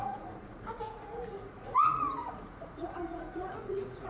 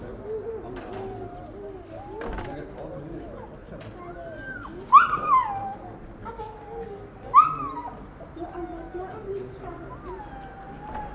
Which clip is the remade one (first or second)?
first